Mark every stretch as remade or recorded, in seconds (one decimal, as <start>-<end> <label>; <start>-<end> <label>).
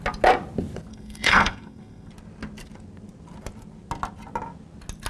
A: 0.0-0.9 recorded; 0.9-2.1 remade; 2.1-5.1 recorded